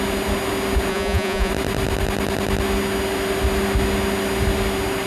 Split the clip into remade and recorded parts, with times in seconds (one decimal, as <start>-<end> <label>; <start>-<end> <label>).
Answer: 0.0-0.9 recorded; 0.9-1.5 remade; 1.5-5.1 recorded